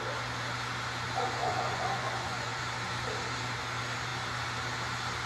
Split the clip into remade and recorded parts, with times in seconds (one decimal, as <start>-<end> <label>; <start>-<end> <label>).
0.0-1.4 recorded; 1.4-2.6 remade; 2.6-5.3 recorded